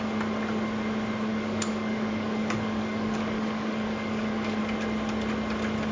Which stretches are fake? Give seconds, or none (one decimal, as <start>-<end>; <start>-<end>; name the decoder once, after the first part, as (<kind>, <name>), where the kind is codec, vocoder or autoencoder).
1.3-4.6 (codec, DAC)